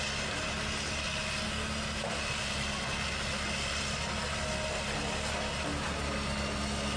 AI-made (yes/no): no